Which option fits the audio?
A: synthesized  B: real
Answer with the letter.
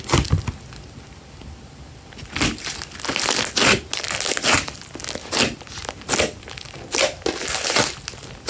B